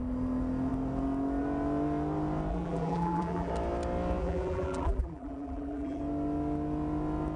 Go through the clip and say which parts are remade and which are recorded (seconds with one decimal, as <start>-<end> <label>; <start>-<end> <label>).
0.0-2.5 recorded; 2.5-3.5 remade; 3.5-4.2 recorded; 4.2-6.0 remade; 6.0-7.4 recorded